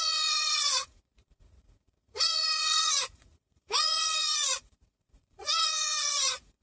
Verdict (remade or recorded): remade